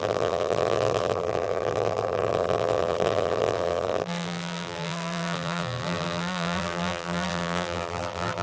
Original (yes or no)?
no